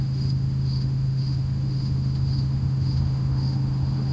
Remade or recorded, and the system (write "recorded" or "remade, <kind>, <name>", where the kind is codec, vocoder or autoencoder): remade, autoencoder, DAC-VAE